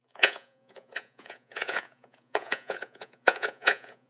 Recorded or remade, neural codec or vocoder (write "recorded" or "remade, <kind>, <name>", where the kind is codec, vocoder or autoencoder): remade, vocoder, Vocos